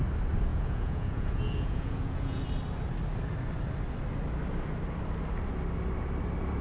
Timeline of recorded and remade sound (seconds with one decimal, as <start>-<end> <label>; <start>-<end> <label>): 0.0-0.5 recorded; 0.5-2.4 remade; 2.4-6.6 recorded